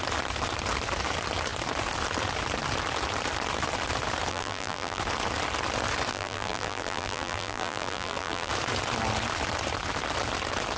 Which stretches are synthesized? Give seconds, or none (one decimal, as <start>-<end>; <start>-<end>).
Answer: 4.3-5.0; 6.1-8.5